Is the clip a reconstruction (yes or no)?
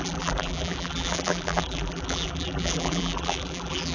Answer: yes